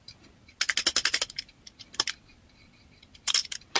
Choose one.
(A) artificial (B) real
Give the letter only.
B